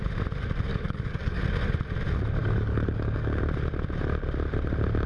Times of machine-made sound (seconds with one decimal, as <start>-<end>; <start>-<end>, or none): 0.7-1.4; 2.4-3.4